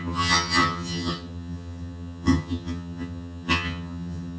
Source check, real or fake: fake